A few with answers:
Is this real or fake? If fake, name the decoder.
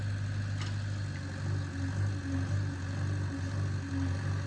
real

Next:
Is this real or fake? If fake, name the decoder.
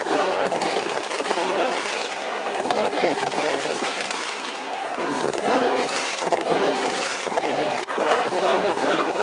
fake, codec, SNAC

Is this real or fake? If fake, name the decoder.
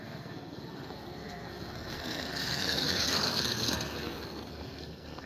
fake, codec, SNAC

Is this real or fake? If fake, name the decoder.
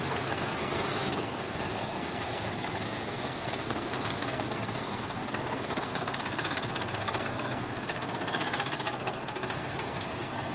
fake, codec, SNAC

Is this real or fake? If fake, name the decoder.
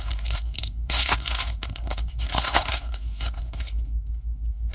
fake, codec, SNAC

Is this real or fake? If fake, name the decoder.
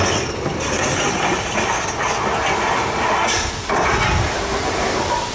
real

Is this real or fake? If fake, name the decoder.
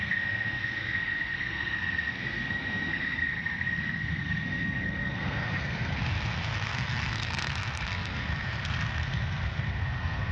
fake, codec, SNAC